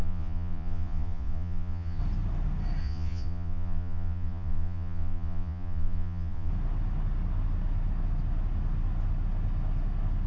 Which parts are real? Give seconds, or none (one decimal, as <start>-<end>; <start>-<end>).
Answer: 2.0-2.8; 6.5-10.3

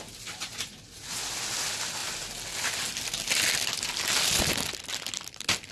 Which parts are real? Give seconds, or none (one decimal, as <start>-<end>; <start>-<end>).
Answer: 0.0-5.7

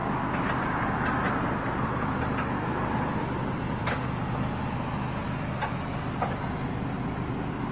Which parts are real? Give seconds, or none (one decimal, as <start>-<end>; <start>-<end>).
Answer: 0.0-7.7